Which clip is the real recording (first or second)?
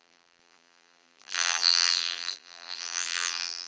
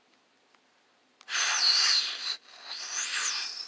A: second